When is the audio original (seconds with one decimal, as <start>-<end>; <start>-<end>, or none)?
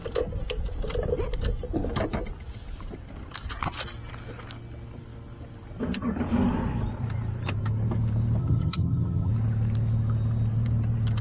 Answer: 0.0-8.4; 9.3-11.2